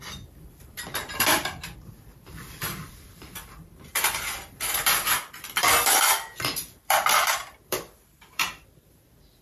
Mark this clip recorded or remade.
remade